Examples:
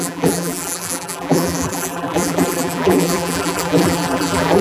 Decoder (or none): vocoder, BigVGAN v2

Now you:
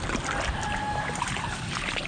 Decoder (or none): none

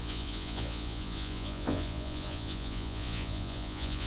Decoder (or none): vocoder, Vocos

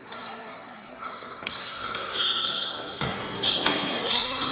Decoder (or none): codec, SNAC